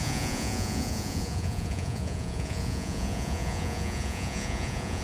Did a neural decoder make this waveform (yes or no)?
yes